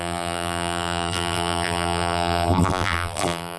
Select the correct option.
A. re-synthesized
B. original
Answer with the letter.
A